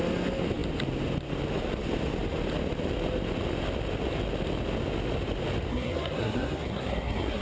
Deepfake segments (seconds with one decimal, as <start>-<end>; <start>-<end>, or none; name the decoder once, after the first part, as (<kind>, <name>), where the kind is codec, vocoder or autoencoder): 5.7-7.4 (codec, SNAC)